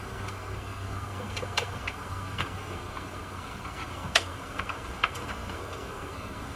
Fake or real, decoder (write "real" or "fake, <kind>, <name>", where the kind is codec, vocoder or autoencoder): fake, codec, SNAC